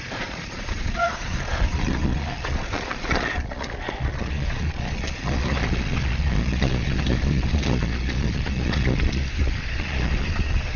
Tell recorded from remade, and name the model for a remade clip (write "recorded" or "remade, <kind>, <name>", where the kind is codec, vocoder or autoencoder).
remade, vocoder, Vocos